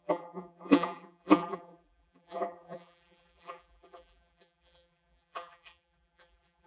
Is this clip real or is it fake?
fake